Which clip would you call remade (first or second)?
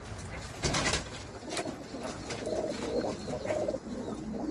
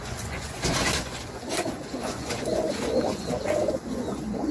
second